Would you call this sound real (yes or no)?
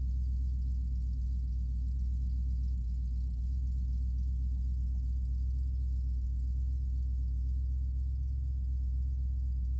yes